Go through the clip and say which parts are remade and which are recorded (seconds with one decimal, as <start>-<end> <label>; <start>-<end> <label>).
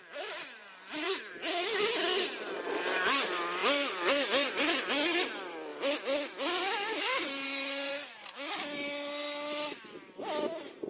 0.0-0.6 recorded; 0.6-1.2 remade; 1.2-3.6 recorded; 3.6-4.6 remade; 4.6-5.7 recorded; 5.7-7.9 remade; 7.9-10.9 recorded